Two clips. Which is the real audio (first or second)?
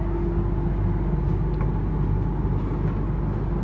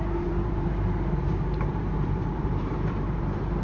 first